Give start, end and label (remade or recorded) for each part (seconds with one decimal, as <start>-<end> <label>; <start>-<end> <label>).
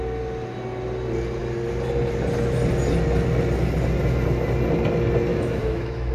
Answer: 0.0-5.3 recorded; 5.3-6.1 remade